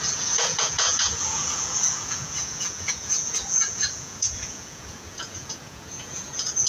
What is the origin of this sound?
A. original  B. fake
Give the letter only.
B